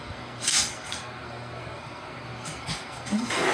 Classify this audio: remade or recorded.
remade